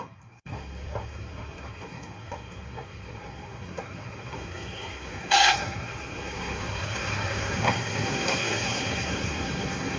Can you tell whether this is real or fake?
fake